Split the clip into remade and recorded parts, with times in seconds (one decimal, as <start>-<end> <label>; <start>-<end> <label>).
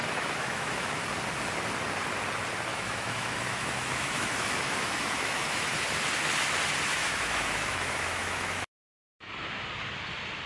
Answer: 0.0-1.0 remade; 1.0-2.7 recorded; 2.7-5.7 remade; 5.7-7.0 recorded; 7.0-9.3 remade; 9.3-10.5 recorded